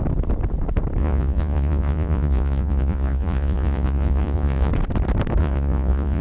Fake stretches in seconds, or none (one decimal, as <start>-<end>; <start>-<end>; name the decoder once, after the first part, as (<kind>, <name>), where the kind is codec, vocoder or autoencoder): 1.0-4.7 (vocoder, Vocos); 5.4-6.2